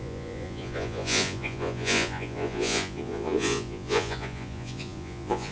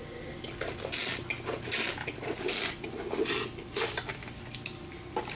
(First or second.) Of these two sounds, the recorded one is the second